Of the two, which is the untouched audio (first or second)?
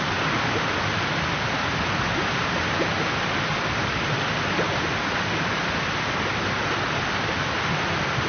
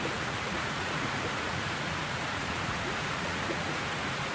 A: first